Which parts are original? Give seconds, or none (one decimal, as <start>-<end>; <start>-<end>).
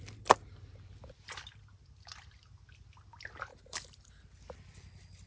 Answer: 0.0-3.5; 4.1-5.3